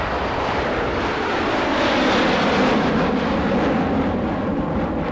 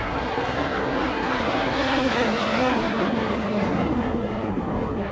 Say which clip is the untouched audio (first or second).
first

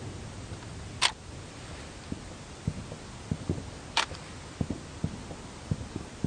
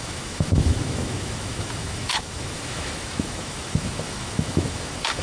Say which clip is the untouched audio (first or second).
first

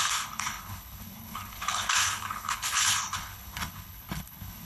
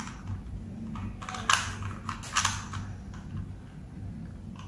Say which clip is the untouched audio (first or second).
second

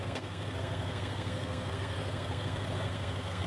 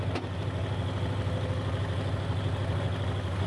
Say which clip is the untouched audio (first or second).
second